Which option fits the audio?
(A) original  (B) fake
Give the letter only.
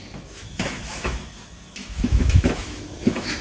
B